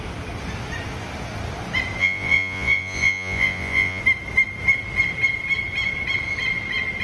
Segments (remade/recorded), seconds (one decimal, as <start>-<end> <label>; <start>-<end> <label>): 0.0-2.0 recorded; 2.0-4.0 remade; 4.0-7.0 recorded